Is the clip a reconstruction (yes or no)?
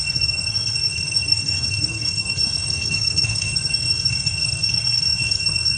yes